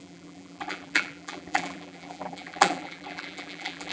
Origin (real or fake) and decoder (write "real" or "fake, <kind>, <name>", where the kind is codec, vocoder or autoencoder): fake, vocoder, BigVGAN v2